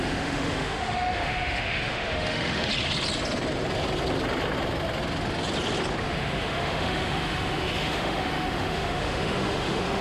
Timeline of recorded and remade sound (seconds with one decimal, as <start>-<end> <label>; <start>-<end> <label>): 0.0-2.7 remade; 2.7-6.0 recorded; 6.0-10.0 remade